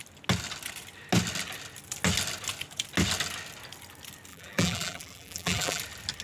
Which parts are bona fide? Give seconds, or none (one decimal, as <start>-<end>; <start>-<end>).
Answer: 0.0-4.3; 5.8-6.2